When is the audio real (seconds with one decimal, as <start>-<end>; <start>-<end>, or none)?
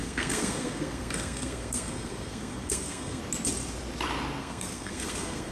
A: 3.2-4.4